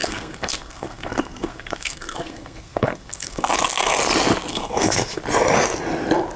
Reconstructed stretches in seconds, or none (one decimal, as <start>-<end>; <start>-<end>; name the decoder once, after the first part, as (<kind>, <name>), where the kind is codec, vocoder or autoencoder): 0.0-3.5 (codec, SNAC); 4.5-5.2